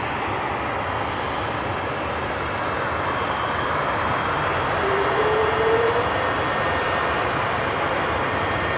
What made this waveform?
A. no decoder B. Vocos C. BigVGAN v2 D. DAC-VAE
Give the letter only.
A